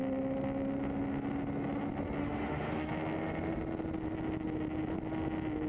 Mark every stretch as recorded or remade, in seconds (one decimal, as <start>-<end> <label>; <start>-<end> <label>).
0.0-2.2 recorded; 2.2-2.9 remade; 2.9-5.7 recorded